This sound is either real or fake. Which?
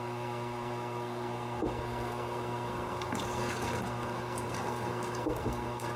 fake